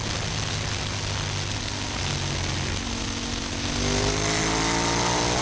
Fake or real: real